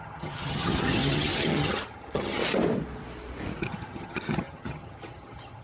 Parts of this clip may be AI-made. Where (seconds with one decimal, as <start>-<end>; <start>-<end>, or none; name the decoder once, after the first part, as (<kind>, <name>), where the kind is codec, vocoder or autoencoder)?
0.0-2.4 (vocoder, HiFi-GAN); 3.6-5.6